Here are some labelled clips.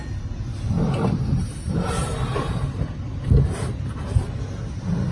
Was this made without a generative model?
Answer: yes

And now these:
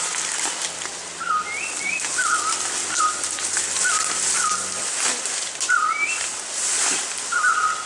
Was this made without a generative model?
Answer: yes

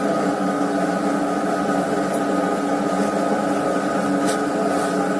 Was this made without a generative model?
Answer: yes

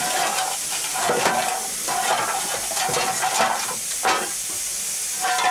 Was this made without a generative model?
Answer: yes